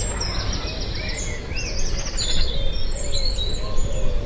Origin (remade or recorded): recorded